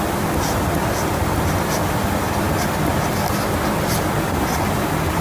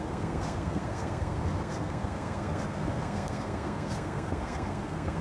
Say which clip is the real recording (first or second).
first